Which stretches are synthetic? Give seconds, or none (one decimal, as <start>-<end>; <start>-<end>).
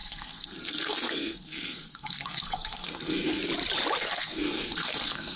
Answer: 0.0-3.4; 4.0-5.4